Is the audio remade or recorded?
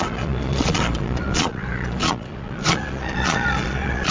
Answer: remade